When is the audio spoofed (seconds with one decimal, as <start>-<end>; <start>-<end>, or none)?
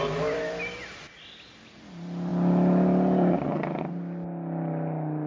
none